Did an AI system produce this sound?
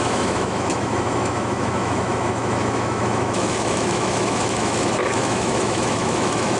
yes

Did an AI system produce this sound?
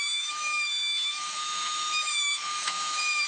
yes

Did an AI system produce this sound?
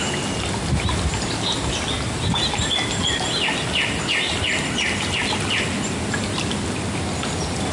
no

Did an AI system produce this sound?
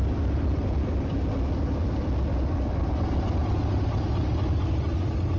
no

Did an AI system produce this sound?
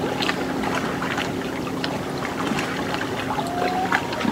no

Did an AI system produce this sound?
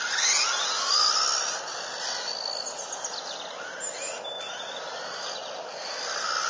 no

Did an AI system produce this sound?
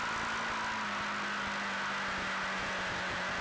no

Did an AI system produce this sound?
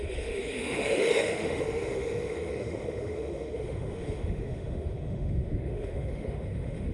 yes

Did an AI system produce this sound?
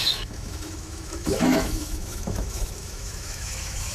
yes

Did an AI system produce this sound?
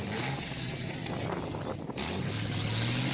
no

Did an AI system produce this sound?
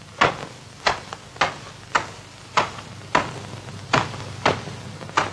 no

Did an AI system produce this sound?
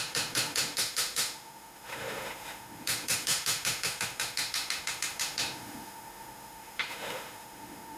yes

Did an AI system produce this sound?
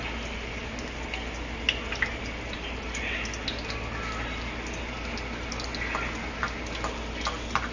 no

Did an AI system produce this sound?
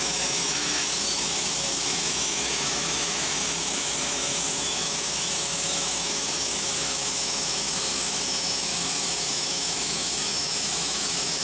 yes